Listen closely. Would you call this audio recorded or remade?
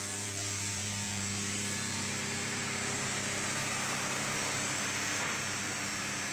remade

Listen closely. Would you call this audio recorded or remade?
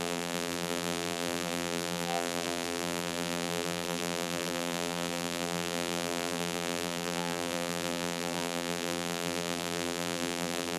remade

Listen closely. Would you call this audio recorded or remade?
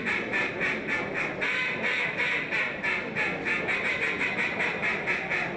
remade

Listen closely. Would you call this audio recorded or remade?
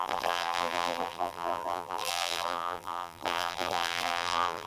remade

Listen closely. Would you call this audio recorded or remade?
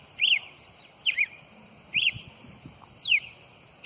recorded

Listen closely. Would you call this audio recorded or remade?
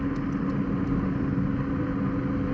recorded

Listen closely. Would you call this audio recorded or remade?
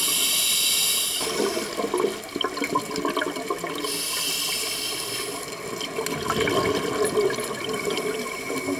recorded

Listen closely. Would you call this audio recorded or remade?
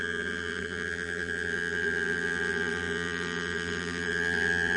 remade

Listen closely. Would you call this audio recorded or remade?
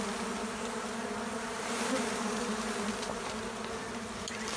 remade